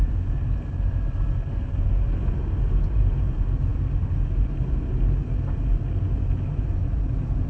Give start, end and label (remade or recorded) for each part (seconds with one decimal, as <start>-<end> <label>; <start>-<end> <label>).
0.0-7.5 recorded